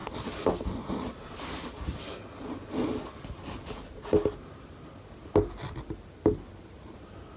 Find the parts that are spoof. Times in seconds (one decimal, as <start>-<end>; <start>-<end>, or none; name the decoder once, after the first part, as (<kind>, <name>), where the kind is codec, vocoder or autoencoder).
none